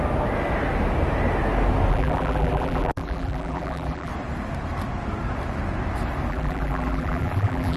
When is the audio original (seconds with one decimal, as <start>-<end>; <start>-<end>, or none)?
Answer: 0.0-1.9; 4.1-6.3